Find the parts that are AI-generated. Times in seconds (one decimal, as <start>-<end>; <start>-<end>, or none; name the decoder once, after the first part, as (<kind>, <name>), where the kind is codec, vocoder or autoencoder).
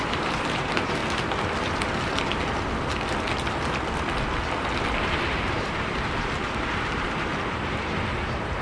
0.0-1.0 (vocoder, BigVGAN v2); 5.0-8.6